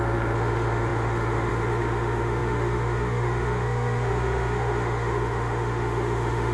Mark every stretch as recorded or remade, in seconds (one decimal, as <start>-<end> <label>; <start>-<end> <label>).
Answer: 0.0-6.5 remade